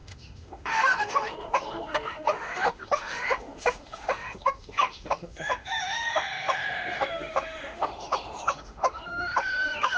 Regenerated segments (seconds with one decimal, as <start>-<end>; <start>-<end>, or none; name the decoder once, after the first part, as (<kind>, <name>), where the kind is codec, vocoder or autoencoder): 0.0-10.0 (autoencoder, DAC-VAE)